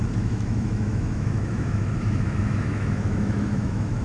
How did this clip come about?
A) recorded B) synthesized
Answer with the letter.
B